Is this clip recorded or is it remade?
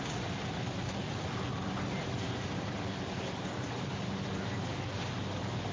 recorded